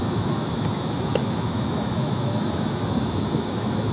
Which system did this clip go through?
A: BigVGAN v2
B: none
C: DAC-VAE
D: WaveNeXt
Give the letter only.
C